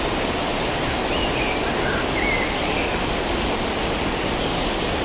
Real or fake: real